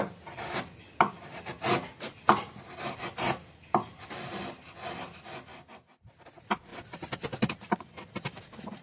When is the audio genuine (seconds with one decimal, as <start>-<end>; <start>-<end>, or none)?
0.0-8.8